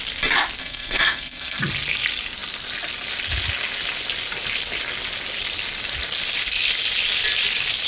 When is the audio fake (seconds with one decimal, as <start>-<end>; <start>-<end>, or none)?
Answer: 0.6-1.6